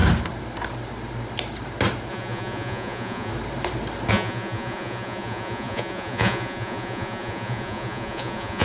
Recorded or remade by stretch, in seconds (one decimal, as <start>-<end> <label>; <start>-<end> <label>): 0.0-2.1 recorded; 2.1-3.3 remade; 3.3-4.1 recorded; 4.1-8.6 remade